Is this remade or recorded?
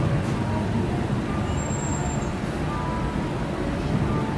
recorded